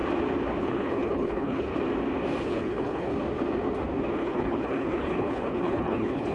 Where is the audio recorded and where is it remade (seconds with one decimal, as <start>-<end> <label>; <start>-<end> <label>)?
0.0-0.6 recorded; 0.6-1.7 remade; 1.7-2.4 recorded; 2.4-3.1 remade; 3.1-4.1 recorded; 4.1-6.3 remade

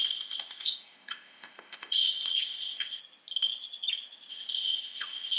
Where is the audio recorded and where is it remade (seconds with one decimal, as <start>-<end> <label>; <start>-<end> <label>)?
0.0-3.0 remade; 3.0-4.3 recorded; 4.3-5.4 remade

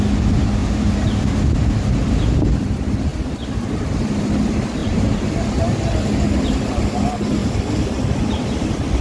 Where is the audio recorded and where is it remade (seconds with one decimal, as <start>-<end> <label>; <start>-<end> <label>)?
0.0-0.6 recorded; 0.6-1.4 remade; 1.4-4.8 recorded; 4.8-5.3 remade; 5.3-9.0 recorded

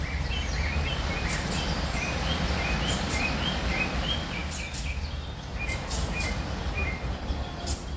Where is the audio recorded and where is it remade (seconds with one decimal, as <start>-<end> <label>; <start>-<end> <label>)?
0.0-8.0 recorded

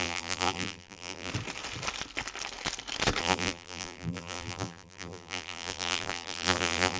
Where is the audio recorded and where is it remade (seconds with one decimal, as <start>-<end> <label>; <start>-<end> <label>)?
0.0-1.3 remade; 1.3-3.2 recorded; 3.2-7.0 remade

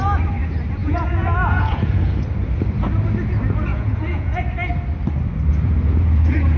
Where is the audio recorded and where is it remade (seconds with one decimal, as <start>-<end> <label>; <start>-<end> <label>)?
0.0-0.8 recorded; 0.8-2.1 remade; 2.1-3.7 recorded; 3.7-4.4 remade; 4.4-5.5 recorded; 5.5-6.6 remade

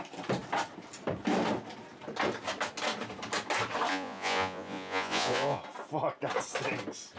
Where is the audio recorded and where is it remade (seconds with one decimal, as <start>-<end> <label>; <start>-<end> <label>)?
0.0-3.9 recorded; 3.9-5.6 remade; 5.6-7.2 recorded